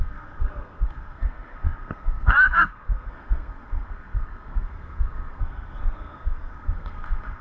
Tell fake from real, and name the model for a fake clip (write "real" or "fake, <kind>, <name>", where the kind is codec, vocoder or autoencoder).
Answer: fake, codec, SNAC